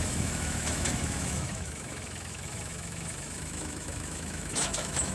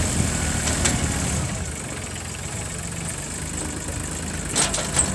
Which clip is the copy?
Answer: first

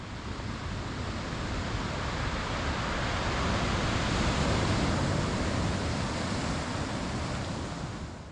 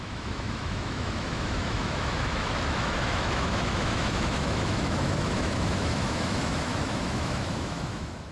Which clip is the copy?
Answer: second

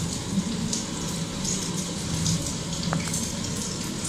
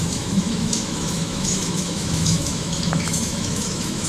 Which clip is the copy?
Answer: second